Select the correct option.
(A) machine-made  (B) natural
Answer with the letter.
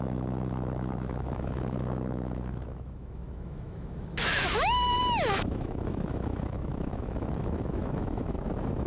A